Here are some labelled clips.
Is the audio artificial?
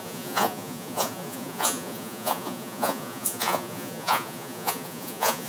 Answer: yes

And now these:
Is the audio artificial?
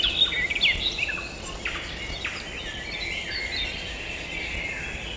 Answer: no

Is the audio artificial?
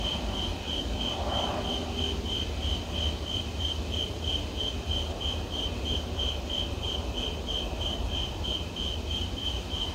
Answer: no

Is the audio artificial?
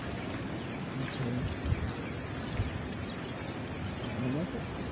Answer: no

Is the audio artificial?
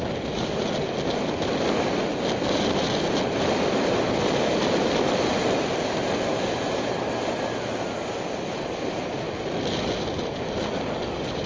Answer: no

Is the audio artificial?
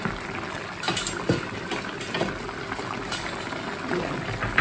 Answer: no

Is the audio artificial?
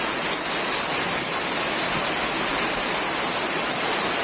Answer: no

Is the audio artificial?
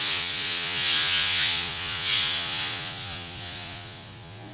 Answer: yes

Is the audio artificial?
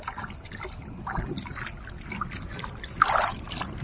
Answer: no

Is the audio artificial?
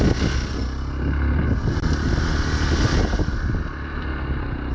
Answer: no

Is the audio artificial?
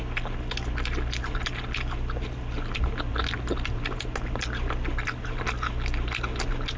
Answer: no